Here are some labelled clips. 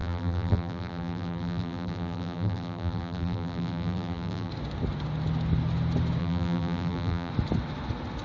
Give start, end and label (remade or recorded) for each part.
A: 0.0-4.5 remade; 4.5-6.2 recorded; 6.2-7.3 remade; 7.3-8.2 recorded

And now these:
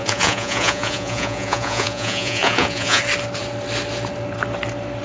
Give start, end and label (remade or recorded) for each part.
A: 0.0-3.0 remade; 3.0-5.0 recorded